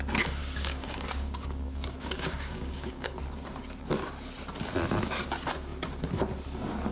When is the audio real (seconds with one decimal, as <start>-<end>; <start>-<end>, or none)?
0.0-0.4; 3.1-6.9

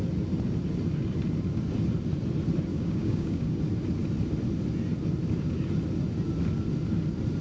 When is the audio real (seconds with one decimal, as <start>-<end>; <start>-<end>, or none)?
0.0-2.7; 3.6-7.4

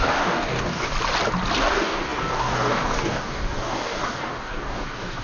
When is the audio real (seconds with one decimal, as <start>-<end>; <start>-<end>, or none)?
0.9-1.6